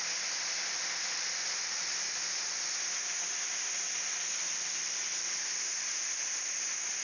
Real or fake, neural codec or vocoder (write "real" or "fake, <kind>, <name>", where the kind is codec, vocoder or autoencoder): real